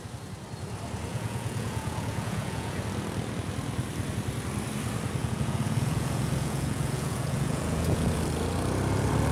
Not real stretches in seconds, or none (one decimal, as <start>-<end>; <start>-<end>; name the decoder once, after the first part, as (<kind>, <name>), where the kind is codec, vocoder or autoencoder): 1.1-2.8 (vocoder, Vocos); 5.2-8.1